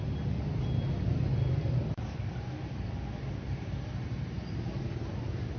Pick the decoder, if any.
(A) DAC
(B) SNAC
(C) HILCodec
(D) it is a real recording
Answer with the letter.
D